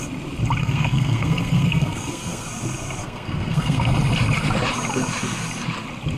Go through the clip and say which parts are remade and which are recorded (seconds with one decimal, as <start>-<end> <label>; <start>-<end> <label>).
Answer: 0.0-0.6 recorded; 0.6-2.5 remade; 2.5-3.0 recorded; 3.0-3.9 remade; 3.9-6.2 recorded